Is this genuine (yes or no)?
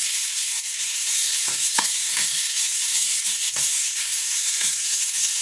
no